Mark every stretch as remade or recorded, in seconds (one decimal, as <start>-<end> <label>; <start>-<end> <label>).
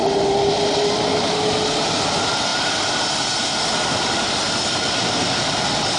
0.0-6.0 recorded